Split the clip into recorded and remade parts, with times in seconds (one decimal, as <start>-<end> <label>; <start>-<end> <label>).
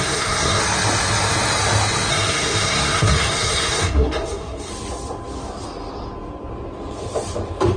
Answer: 0.0-0.6 remade; 0.6-2.1 recorded; 2.1-4.7 remade; 4.7-7.8 recorded